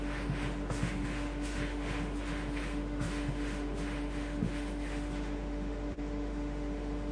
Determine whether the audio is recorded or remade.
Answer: remade